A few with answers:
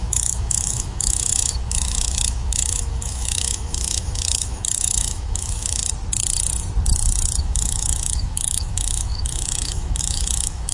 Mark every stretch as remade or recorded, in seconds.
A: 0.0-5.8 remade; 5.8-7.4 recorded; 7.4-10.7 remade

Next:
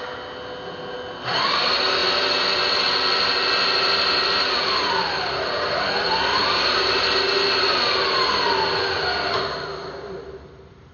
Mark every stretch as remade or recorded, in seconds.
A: 0.0-10.9 recorded

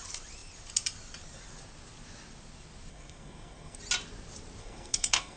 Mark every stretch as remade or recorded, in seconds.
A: 0.0-2.9 recorded; 2.9-3.8 remade; 3.8-4.6 recorded; 4.6-5.4 remade

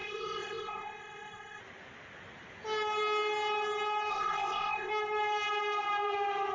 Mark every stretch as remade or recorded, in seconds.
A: 0.0-1.6 remade; 1.6-4.1 recorded; 4.1-4.9 remade; 4.9-6.5 recorded